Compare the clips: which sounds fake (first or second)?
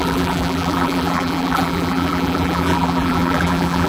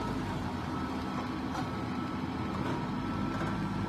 first